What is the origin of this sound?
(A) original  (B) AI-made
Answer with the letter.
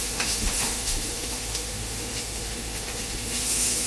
B